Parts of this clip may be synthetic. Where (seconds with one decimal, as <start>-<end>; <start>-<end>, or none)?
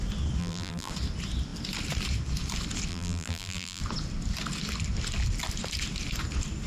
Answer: 0.4-0.9; 2.9-3.8